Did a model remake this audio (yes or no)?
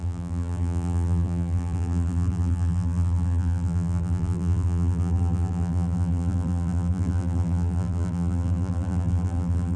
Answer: yes